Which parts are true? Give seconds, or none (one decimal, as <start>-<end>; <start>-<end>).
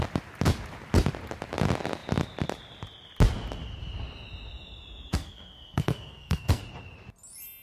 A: 0.0-5.1; 6.6-7.6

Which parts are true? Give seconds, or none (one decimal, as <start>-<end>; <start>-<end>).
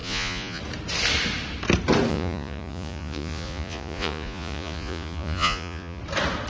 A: 0.6-2.1; 6.0-6.5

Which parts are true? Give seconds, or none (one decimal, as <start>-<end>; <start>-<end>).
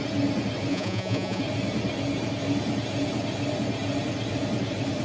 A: 0.0-0.7; 1.4-5.0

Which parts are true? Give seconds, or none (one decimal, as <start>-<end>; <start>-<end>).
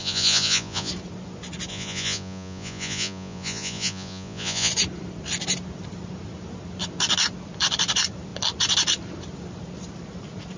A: 0.9-1.7; 4.7-10.6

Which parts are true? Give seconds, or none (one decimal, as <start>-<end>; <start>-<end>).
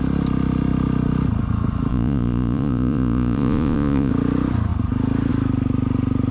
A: 0.0-1.9; 4.1-6.3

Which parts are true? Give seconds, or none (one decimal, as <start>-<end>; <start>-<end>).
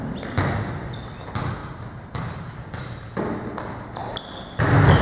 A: 0.0-1.6; 2.5-5.0